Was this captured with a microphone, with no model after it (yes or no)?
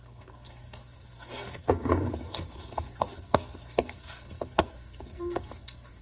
no